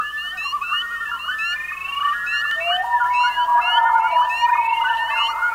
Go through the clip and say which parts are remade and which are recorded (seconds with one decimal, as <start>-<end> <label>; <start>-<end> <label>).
0.0-5.5 recorded